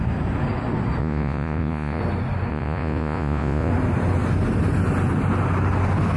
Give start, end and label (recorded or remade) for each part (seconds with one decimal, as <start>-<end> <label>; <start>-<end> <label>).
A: 0.0-1.0 recorded; 1.0-2.0 remade; 2.0-2.5 recorded; 2.5-3.7 remade; 3.7-6.2 recorded